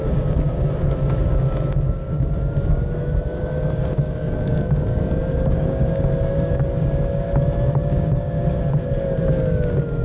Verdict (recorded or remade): remade